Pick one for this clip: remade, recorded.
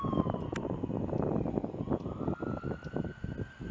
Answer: recorded